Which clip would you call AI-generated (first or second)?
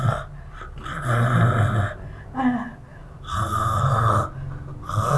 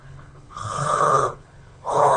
second